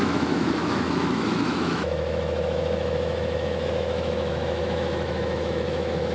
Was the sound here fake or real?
fake